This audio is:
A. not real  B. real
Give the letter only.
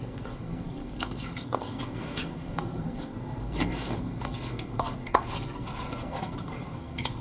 A